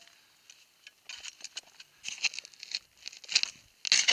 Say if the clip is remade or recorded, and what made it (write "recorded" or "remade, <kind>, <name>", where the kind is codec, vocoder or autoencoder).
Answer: recorded